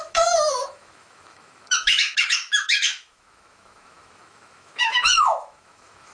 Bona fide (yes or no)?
no